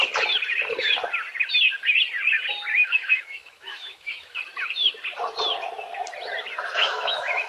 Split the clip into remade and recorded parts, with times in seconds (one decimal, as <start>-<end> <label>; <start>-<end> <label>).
0.0-2.8 recorded; 2.8-4.4 remade; 4.4-6.8 recorded; 6.8-7.5 remade